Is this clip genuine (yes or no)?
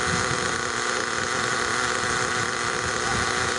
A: yes